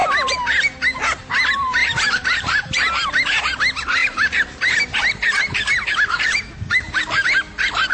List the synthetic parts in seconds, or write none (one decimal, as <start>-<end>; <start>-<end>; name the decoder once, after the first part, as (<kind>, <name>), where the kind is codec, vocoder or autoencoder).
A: 1.8-2.7 (vocoder, BigVGAN v2); 4.0-7.0